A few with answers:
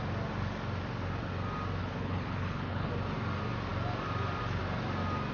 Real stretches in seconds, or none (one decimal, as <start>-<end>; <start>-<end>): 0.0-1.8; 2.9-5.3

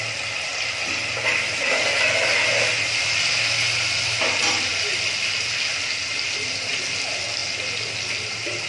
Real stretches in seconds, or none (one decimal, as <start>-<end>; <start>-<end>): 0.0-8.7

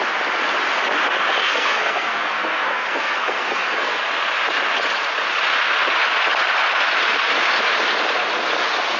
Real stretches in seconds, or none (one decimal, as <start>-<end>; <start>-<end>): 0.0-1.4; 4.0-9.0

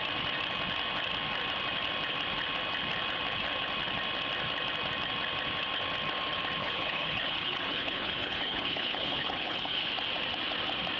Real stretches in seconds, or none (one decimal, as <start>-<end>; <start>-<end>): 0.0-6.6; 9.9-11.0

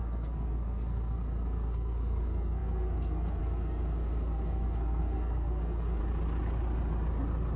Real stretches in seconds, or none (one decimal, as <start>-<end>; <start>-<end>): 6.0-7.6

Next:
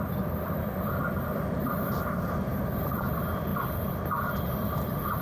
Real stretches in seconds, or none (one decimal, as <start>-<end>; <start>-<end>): 0.0-0.9; 1.6-2.5; 3.1-3.5

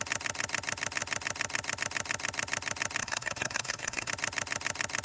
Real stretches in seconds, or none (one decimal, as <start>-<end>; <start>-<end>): 0.0-3.0; 4.1-5.0

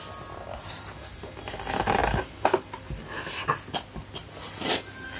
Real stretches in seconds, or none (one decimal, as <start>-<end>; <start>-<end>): 0.0-5.2